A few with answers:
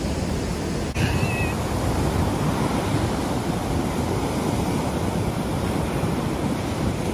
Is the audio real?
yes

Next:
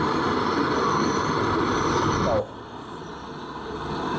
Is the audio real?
yes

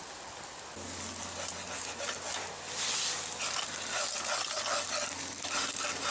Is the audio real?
yes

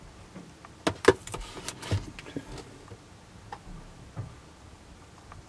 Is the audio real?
yes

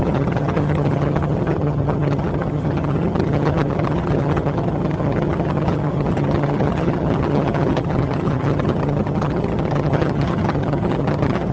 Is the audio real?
no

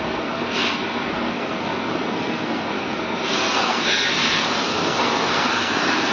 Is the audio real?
no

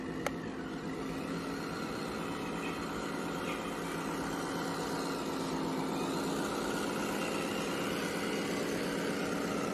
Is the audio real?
yes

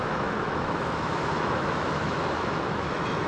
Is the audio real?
no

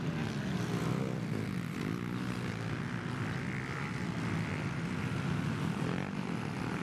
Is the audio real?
yes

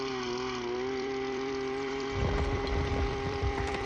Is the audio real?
no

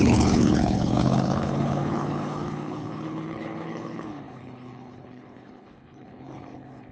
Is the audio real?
no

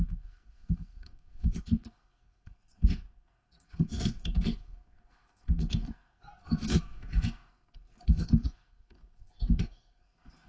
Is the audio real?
no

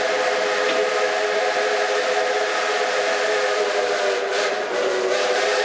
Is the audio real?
yes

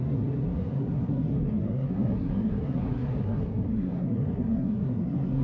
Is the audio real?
no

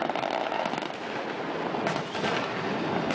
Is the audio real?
yes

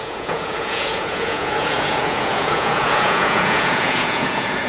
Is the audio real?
no